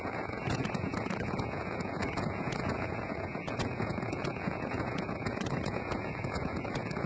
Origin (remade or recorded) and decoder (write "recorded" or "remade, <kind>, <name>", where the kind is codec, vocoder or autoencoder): remade, vocoder, Vocos